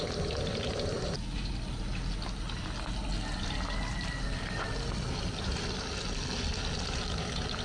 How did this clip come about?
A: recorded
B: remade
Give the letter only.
A